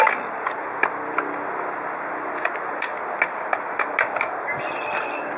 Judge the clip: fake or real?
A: real